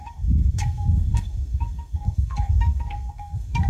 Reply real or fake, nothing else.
fake